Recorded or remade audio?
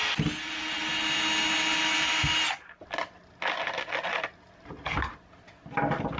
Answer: recorded